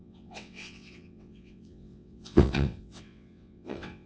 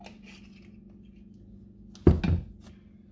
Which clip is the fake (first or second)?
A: first